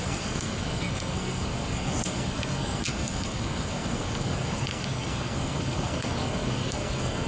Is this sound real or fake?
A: fake